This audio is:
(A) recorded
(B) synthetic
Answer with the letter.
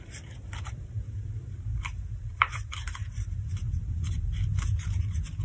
B